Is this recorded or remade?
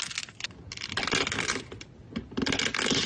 recorded